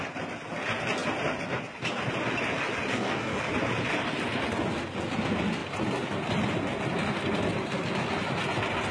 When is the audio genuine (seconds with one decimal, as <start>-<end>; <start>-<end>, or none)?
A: 0.0-2.9; 3.4-8.9